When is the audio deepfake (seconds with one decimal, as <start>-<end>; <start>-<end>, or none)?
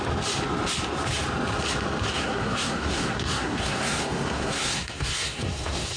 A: 2.1-6.0